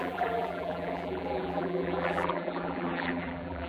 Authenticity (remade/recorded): remade